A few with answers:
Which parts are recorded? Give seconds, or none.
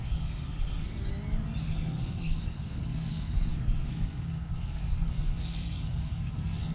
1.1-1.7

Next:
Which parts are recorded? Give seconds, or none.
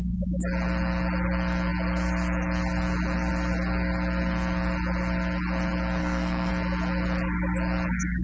0.0-6.0; 6.5-8.2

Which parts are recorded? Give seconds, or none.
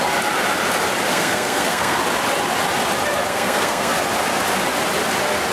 0.0-1.1; 2.0-3.3; 3.9-5.5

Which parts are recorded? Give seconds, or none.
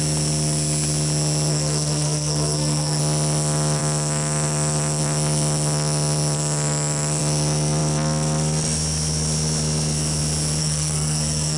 0.0-1.5; 3.0-10.6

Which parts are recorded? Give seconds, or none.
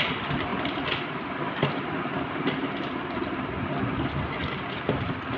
0.0-5.4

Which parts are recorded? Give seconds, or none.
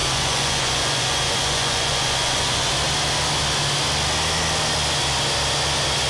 2.7-6.1